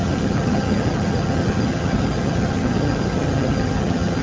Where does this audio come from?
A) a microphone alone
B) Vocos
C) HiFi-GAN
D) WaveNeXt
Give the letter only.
C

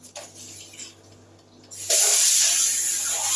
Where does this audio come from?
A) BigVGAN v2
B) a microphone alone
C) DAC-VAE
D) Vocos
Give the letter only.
B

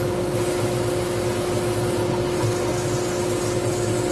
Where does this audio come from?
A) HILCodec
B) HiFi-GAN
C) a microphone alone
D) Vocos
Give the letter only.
C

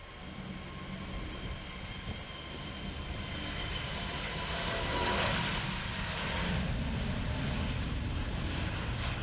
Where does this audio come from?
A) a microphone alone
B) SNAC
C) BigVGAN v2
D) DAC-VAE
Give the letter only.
A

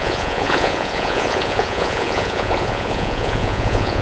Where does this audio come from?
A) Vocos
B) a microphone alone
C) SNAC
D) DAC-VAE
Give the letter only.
A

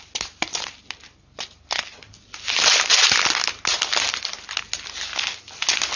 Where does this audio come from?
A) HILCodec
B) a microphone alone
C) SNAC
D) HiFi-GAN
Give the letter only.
B